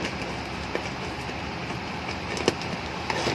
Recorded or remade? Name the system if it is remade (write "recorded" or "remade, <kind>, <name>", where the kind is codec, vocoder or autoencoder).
recorded